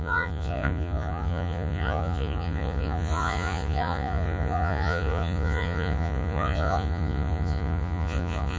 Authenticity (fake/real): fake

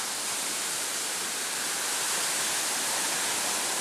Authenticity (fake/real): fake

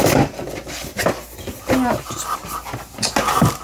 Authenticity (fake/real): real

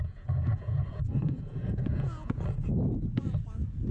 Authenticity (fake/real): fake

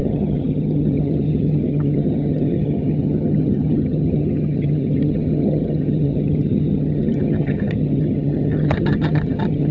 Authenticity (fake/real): fake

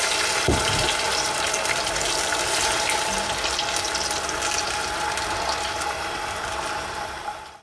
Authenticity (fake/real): real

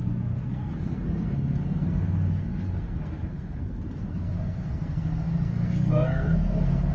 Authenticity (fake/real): fake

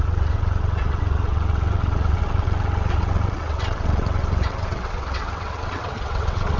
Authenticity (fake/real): fake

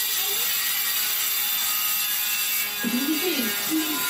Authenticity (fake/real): real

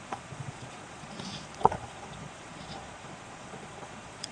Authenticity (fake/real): fake